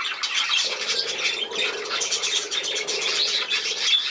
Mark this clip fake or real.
real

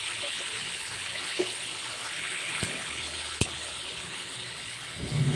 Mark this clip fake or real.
fake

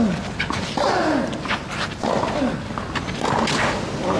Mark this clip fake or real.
real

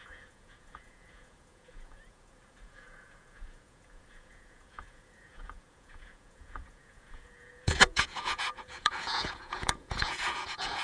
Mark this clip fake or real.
fake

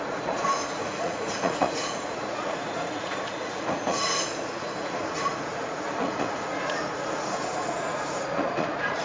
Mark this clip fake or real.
fake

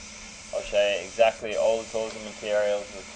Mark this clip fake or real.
real